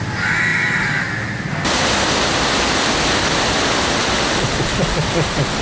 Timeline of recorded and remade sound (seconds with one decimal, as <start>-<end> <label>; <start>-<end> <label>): 0.0-5.6 recorded